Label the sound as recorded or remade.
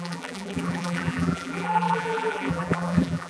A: remade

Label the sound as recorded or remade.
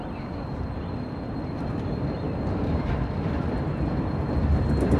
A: remade